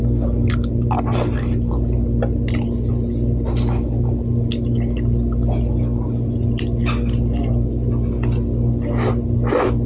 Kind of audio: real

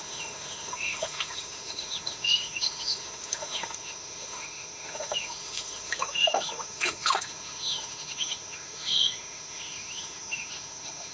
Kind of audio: fake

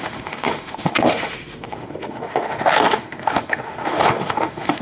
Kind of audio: fake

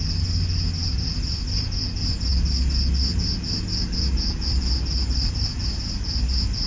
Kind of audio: real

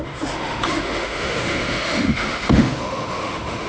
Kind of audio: fake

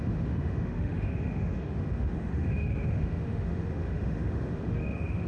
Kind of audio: fake